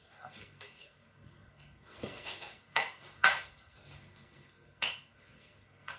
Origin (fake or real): fake